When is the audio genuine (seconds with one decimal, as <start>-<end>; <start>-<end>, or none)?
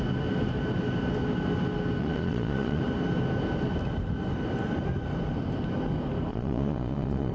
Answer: 0.0-2.0; 2.8-6.3